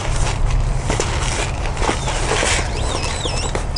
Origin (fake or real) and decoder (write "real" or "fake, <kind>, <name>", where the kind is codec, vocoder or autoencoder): real